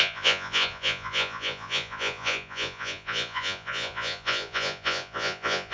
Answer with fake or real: fake